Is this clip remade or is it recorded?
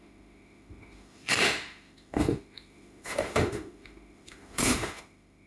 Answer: remade